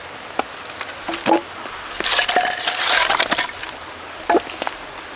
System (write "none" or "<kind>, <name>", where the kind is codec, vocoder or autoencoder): none